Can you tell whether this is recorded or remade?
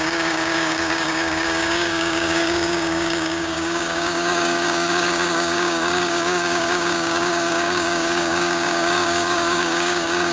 remade